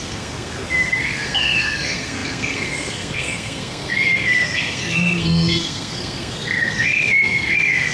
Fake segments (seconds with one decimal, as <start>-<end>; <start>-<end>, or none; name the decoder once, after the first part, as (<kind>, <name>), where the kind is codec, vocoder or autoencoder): 0.0-7.9 (codec, SNAC)